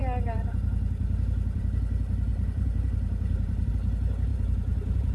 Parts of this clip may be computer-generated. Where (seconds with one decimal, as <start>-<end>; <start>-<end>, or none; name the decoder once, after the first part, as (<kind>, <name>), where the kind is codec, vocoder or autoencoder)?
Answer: 2.3-3.7 (vocoder, BigVGAN v2); 4.3-5.1